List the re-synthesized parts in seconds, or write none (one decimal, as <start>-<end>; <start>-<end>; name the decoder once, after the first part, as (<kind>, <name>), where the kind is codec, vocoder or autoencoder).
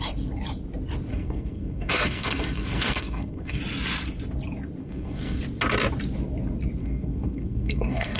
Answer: 1.1-3.6 (codec, SNAC); 4.8-5.4; 6.8-8.2